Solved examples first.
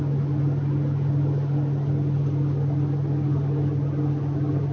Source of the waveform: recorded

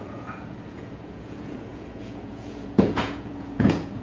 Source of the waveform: remade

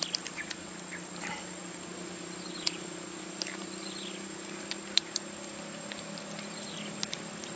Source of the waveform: remade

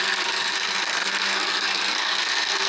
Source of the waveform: remade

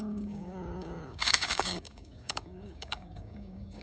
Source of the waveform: remade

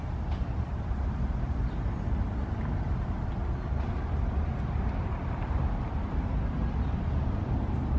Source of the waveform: recorded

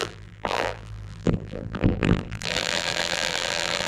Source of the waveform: remade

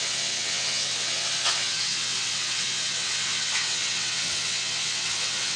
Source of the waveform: remade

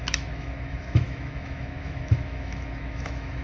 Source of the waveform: remade